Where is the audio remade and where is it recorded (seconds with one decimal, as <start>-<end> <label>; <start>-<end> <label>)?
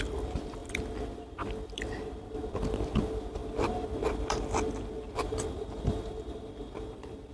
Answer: 0.0-7.3 recorded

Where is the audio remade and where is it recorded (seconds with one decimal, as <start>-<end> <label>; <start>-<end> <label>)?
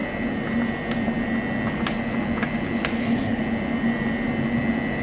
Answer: 0.0-3.0 recorded; 3.0-3.4 remade; 3.4-5.0 recorded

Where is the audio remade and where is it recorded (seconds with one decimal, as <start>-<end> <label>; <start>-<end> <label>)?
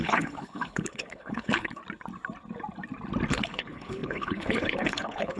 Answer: 0.0-1.8 remade; 1.8-3.3 recorded; 3.3-5.4 remade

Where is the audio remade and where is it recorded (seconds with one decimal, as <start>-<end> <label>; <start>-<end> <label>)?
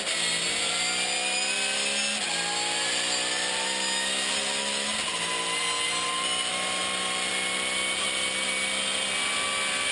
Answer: 0.0-9.9 recorded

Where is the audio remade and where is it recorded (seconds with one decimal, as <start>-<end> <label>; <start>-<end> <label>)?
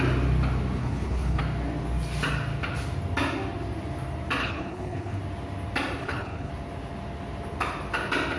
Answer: 0.0-0.8 recorded; 0.8-1.4 remade; 1.4-4.4 recorded; 4.4-5.2 remade; 5.2-6.0 recorded; 6.0-6.5 remade; 6.5-8.4 recorded